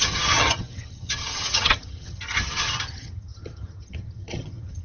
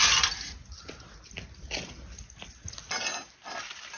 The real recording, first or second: second